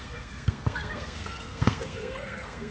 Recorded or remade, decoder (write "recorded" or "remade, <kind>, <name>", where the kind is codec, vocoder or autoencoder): remade, codec, SNAC